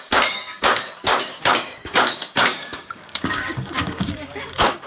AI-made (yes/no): yes